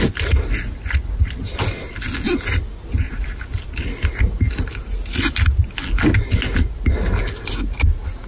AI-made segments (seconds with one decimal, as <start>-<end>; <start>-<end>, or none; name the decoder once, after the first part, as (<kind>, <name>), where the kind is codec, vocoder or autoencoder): none